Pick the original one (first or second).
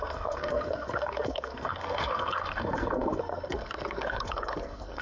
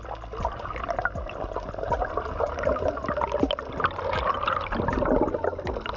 second